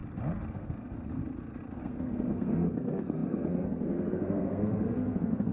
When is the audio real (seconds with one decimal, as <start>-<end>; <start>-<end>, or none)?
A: 0.0-0.5; 1.2-1.8